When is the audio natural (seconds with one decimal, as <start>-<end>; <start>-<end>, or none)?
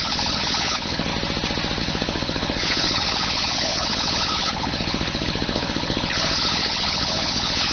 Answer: 1.1-1.8